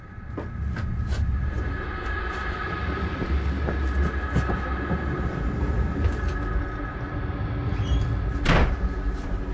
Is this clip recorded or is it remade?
recorded